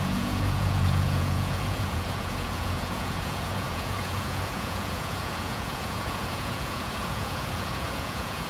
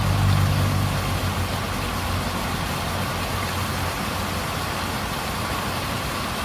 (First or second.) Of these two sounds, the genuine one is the second